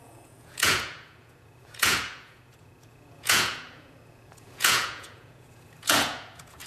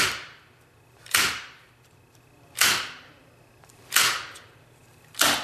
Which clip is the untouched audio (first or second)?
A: second